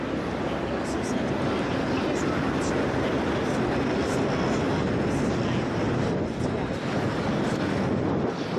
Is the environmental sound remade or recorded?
recorded